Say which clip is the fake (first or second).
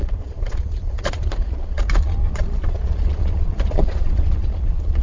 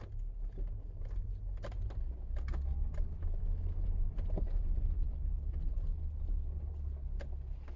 first